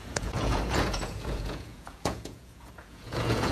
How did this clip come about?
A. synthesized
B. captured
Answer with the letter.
A